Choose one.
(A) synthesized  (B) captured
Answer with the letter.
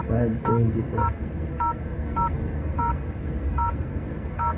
A